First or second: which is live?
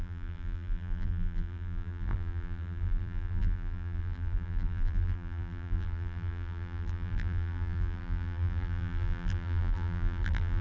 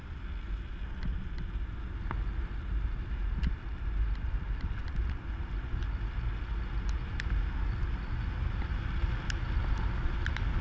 second